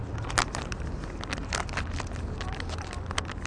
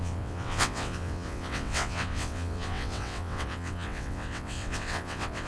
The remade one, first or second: second